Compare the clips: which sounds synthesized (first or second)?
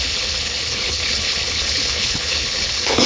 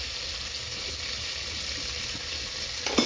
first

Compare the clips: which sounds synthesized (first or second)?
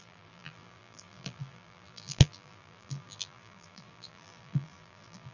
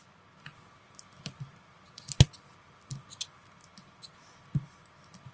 first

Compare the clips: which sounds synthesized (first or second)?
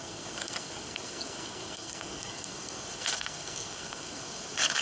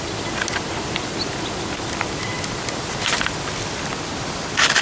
first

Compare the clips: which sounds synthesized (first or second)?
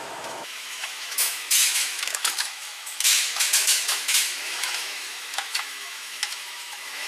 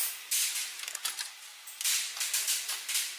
first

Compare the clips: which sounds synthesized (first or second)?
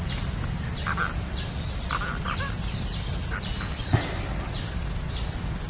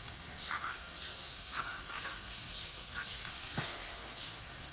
second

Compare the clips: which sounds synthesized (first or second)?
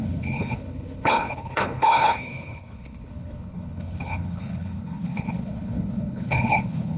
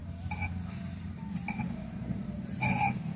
first